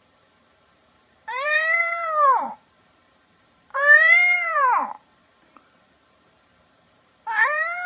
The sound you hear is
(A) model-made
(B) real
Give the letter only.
A